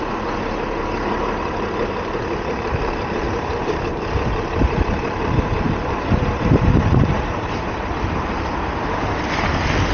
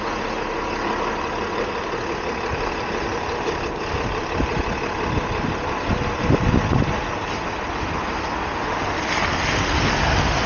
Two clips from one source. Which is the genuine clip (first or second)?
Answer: second